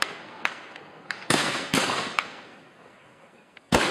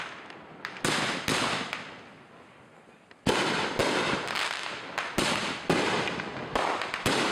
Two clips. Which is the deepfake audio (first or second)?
first